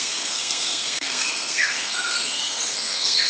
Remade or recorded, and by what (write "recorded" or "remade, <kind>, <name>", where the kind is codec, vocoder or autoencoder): remade, codec, SNAC